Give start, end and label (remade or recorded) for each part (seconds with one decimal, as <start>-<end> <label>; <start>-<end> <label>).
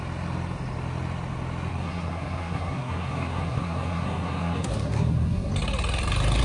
0.0-1.7 recorded; 1.7-5.5 remade; 5.5-6.4 recorded